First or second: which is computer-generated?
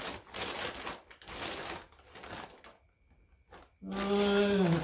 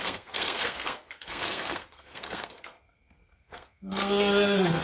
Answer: second